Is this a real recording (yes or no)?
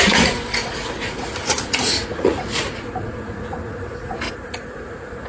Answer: no